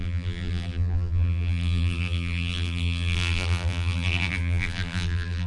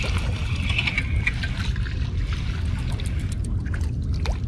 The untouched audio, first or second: second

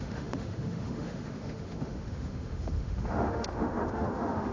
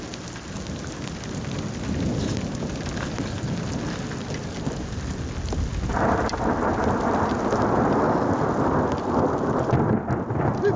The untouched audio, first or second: second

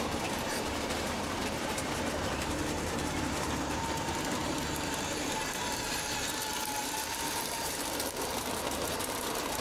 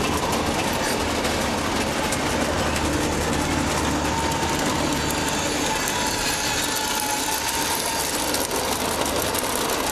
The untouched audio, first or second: second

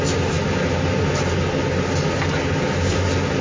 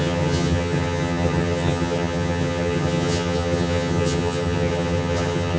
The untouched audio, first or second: first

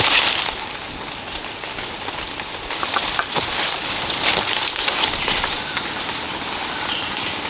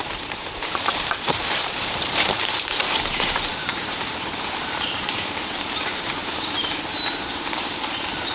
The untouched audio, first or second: first